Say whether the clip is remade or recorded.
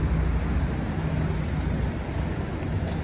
recorded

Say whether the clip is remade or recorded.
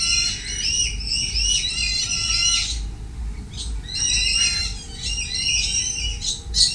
recorded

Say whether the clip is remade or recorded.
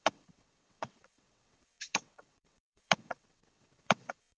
remade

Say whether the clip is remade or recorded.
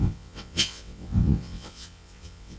remade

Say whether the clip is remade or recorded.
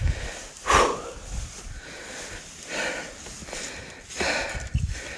recorded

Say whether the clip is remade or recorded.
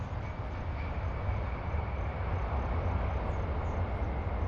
recorded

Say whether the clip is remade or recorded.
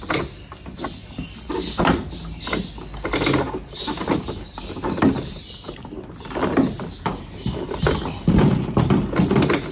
recorded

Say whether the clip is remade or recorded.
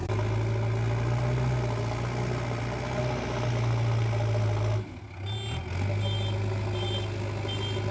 recorded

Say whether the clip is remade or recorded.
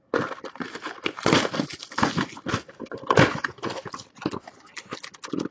recorded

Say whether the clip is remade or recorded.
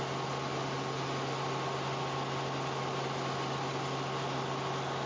recorded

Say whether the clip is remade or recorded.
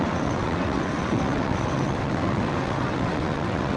remade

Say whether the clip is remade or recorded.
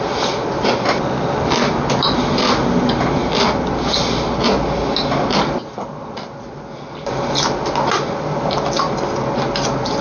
recorded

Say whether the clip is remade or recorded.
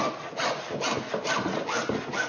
recorded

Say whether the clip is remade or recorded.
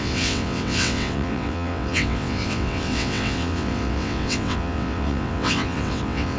remade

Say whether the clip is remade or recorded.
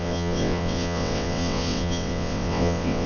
remade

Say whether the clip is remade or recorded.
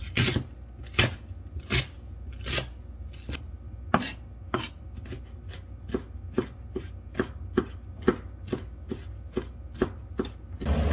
recorded